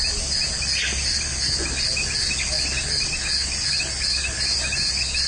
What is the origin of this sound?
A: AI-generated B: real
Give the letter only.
B